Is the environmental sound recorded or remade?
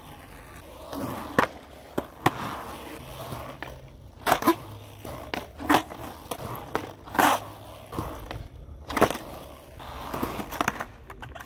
recorded